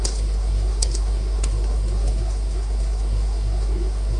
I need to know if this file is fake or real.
fake